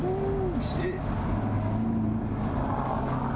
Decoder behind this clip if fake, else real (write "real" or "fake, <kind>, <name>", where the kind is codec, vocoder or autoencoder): real